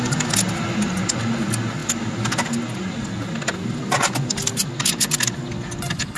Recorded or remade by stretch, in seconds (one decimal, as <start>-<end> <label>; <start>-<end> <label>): 0.0-6.2 recorded